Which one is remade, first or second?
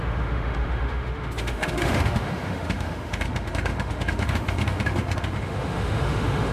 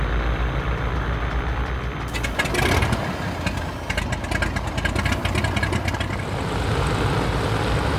first